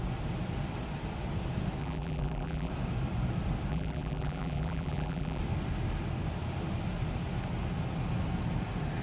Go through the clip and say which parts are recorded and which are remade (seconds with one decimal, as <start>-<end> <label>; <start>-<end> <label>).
0.0-1.8 recorded; 1.8-2.7 remade; 2.7-3.7 recorded; 3.7-5.4 remade; 5.4-9.0 recorded